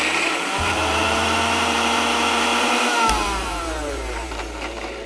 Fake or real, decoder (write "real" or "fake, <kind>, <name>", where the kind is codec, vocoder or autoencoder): fake, vocoder, BigVGAN v2